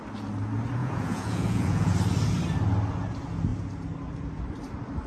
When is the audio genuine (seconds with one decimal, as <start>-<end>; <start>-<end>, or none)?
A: 0.0-0.8; 1.9-5.1